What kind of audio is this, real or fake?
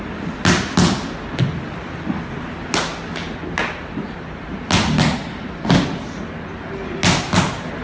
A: real